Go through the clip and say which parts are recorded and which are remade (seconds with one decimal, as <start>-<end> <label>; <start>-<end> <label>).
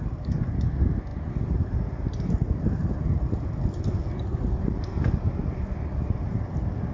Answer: 0.0-6.9 recorded